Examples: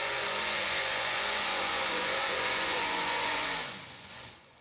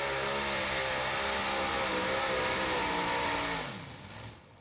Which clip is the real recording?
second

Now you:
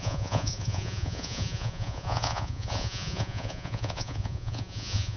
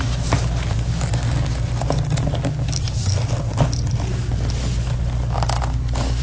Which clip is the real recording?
second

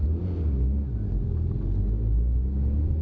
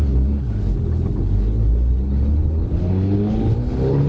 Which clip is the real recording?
first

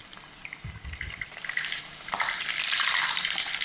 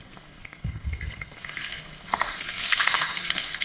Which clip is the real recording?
first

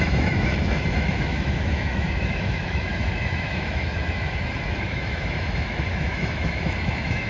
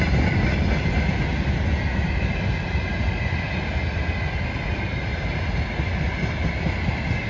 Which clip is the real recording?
second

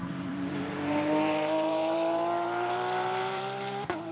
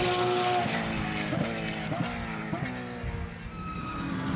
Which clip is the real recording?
second